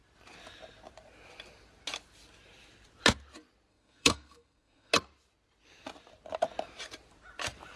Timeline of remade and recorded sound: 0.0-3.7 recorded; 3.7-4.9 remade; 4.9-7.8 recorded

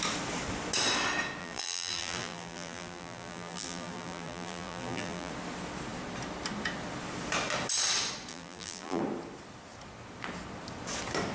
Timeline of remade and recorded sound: 0.0-1.4 recorded; 1.4-5.3 remade; 5.3-8.3 recorded; 8.3-9.0 remade; 9.0-11.3 recorded

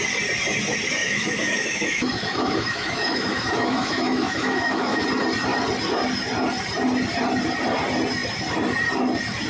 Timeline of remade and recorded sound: 0.0-1.0 recorded; 1.0-5.0 remade; 5.0-9.5 recorded

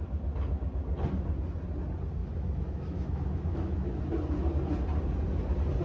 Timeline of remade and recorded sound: 0.0-2.2 recorded; 2.2-4.0 remade; 4.0-5.8 recorded

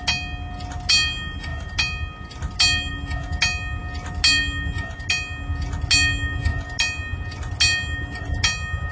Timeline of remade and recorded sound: 0.0-8.9 recorded

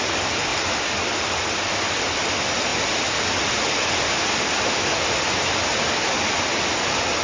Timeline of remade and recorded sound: 0.0-7.2 recorded

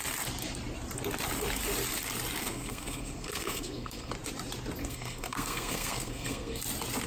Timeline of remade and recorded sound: 0.0-2.4 recorded; 2.4-4.1 remade; 4.1-4.8 recorded; 4.8-6.6 remade; 6.6-7.1 recorded